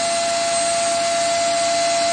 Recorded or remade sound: recorded